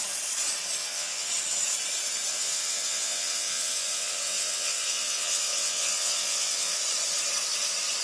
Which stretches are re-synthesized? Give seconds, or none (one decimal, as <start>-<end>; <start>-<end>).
0.8-1.3; 2.3-6.8